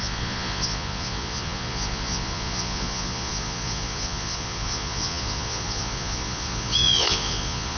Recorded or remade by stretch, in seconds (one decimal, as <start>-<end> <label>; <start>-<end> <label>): 0.0-7.8 remade